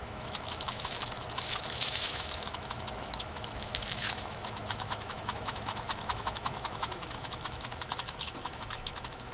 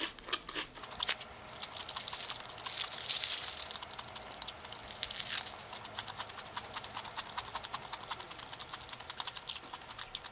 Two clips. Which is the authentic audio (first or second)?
second